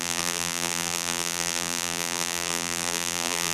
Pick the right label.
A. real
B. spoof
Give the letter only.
B